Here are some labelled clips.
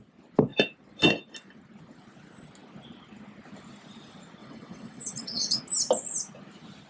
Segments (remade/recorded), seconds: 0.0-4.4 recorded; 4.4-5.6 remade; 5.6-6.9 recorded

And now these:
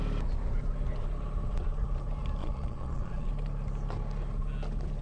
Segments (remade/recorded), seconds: 0.0-2.4 recorded; 2.4-3.3 remade; 3.3-5.0 recorded